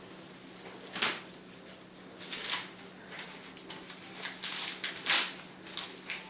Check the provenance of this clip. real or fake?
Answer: real